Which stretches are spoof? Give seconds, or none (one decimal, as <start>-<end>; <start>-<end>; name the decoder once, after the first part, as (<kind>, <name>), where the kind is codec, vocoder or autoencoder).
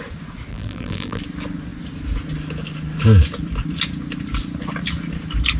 0.5-1.2 (vocoder, BigVGAN v2)